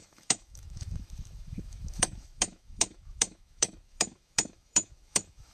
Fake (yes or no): yes